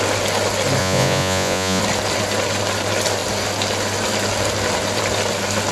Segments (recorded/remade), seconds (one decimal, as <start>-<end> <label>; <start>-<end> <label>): 0.0-0.8 recorded; 0.8-1.8 remade; 1.8-5.7 recorded